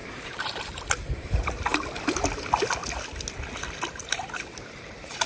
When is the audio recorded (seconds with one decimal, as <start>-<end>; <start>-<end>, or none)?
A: 1.7-4.0